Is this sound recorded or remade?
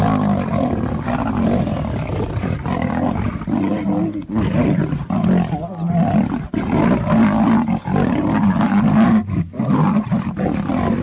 recorded